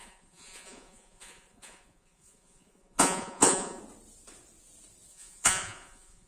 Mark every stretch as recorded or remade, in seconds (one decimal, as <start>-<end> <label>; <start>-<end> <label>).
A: 0.0-3.8 remade; 3.8-5.1 recorded; 5.1-6.3 remade